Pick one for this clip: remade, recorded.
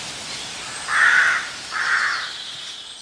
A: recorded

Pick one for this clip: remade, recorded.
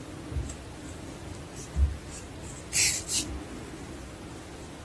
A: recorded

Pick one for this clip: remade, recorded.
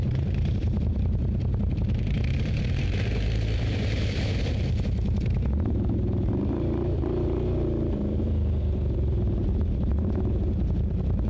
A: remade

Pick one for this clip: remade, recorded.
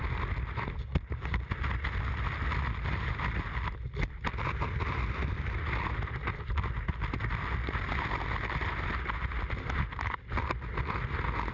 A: recorded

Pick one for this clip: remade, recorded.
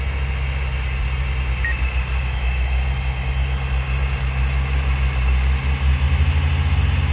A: recorded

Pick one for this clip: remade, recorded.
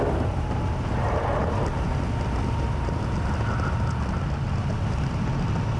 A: recorded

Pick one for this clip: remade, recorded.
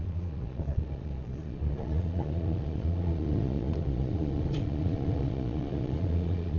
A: remade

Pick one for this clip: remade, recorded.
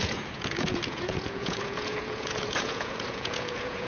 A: remade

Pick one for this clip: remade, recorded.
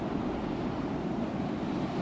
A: recorded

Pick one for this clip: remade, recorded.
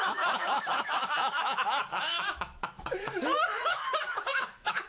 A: remade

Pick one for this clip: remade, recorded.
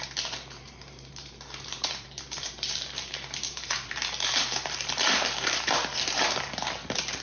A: remade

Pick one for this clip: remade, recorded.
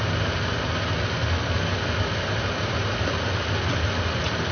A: recorded